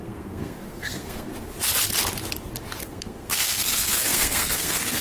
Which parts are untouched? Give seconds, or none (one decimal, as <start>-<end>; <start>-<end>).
1.3-2.8